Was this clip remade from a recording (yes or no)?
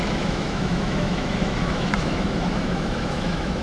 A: yes